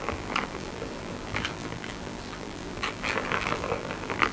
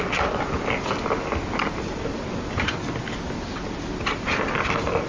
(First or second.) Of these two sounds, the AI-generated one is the first